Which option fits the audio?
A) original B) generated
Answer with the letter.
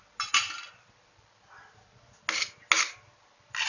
A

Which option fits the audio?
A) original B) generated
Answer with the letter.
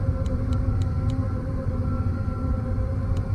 A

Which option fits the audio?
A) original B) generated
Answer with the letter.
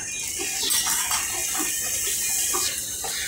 A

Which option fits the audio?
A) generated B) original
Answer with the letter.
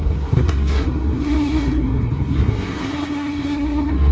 A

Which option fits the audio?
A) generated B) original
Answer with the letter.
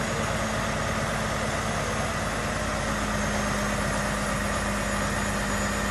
B